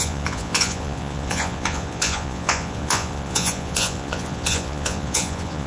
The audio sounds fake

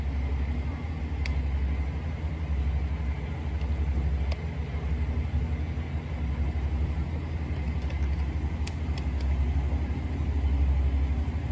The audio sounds real